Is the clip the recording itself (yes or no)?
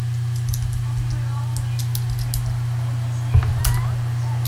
yes